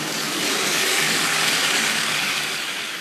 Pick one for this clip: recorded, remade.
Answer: remade